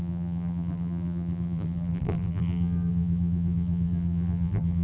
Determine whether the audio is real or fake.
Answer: fake